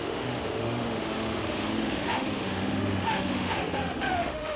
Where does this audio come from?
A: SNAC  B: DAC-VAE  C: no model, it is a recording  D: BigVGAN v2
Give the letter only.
B